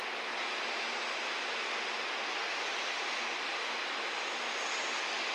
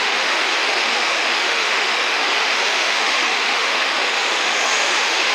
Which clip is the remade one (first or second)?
second